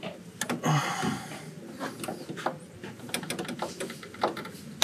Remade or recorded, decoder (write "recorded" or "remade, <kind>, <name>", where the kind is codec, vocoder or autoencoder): recorded